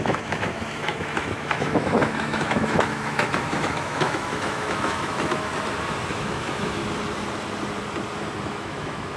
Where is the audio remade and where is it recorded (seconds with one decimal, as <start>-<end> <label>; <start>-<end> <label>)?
0.0-5.5 remade; 5.5-6.1 recorded; 6.1-6.8 remade; 6.8-8.5 recorded; 8.5-9.2 remade